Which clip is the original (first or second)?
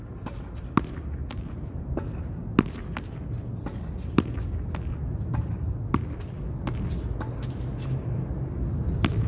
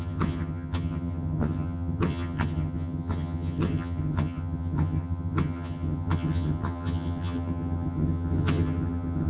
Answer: first